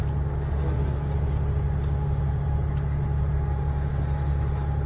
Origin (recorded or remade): recorded